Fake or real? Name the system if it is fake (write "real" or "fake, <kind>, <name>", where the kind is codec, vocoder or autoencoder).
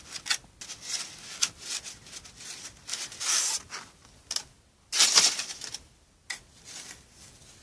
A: real